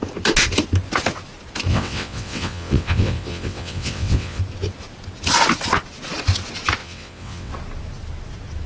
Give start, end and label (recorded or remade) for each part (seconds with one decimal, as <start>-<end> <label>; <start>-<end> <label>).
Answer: 0.0-1.7 recorded; 1.7-4.4 remade; 4.4-6.8 recorded; 6.8-7.5 remade; 7.5-8.7 recorded